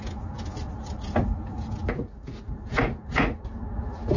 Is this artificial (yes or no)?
no